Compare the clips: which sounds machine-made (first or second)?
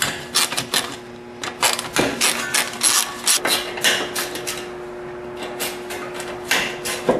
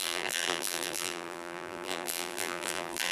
second